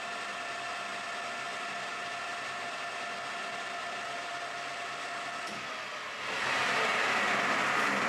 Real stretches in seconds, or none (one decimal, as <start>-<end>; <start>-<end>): 0.0-8.1